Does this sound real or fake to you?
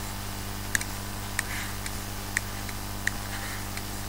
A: real